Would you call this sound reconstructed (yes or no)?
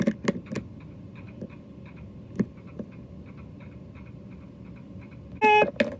no